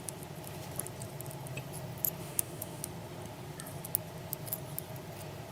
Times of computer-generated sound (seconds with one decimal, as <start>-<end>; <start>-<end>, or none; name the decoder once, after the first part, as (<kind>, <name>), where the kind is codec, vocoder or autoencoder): 2.2-2.8 (autoencoder, DAC-VAE)